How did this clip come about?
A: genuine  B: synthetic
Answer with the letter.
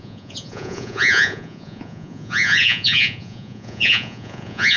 B